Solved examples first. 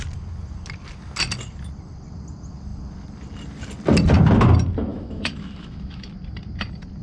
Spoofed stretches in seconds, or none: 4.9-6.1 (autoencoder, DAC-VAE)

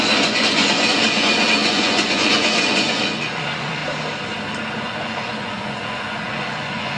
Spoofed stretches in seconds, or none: 0.0-3.8 (vocoder, Vocos); 4.8-7.0

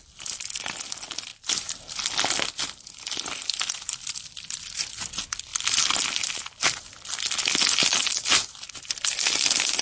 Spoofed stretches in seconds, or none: 5.5-6.0 (vocoder, BigVGAN v2)

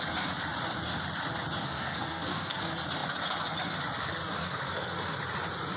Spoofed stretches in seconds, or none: 1.6-2.6 (codec, SNAC); 4.4-4.9

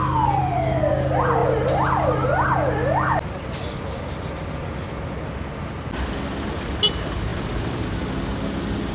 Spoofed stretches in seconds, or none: 0.4-0.9 (vocoder, BigVGAN v2); 7.3-8.1

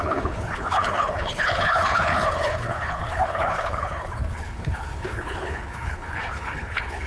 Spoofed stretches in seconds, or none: 0.0-7.1 (codec, HILCodec)

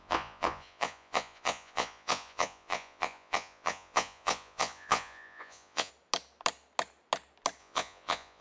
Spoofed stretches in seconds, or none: 0.0-5.9 (vocoder, Vocos); 7.6-8.4

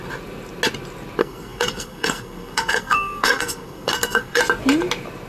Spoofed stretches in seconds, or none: 1.2-4.4 (codec, SNAC)